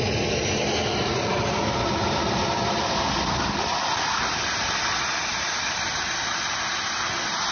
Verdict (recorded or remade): recorded